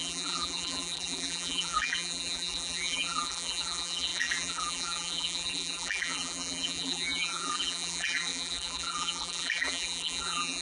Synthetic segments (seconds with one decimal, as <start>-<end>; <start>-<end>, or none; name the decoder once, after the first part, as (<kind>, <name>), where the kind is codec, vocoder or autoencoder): 0.0-10.6 (vocoder, BigVGAN v2)